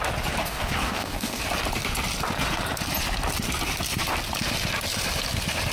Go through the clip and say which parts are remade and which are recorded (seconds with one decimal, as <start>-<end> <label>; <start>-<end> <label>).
0.0-0.4 recorded; 0.4-1.4 remade; 1.4-5.7 recorded